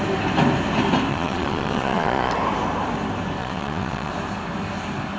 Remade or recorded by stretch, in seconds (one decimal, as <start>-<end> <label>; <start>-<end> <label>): 0.0-1.1 recorded; 1.1-2.3 remade; 2.3-3.4 recorded; 3.4-4.1 remade; 4.1-5.2 recorded